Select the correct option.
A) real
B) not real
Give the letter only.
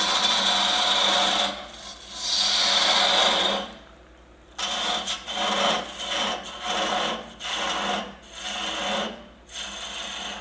A